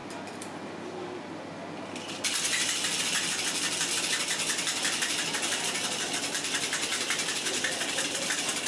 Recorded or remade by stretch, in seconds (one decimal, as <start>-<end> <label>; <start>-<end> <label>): 0.0-8.7 recorded